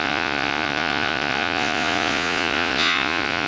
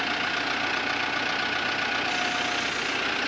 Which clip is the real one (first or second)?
second